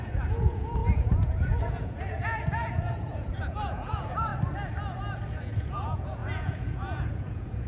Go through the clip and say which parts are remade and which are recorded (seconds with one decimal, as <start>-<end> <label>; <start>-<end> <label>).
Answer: 0.0-4.3 remade; 4.3-5.3 recorded; 5.3-7.7 remade